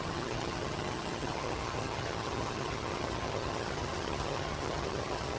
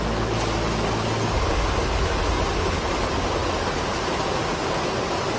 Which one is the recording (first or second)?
second